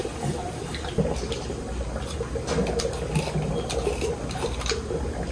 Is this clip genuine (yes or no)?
yes